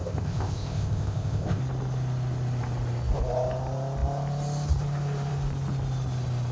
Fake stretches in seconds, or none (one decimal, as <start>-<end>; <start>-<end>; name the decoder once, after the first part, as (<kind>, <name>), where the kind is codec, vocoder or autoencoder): 0.0-1.6 (codec, ZipCodec)